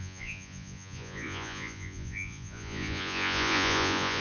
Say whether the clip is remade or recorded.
remade